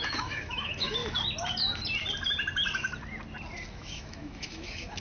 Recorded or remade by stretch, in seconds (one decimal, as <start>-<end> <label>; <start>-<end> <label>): 0.0-1.0 remade; 1.0-3.7 recorded; 3.7-5.0 remade